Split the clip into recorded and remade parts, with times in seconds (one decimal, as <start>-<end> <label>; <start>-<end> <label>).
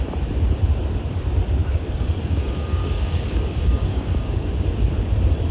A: 0.0-1.6 recorded; 1.6-4.5 remade; 4.5-5.5 recorded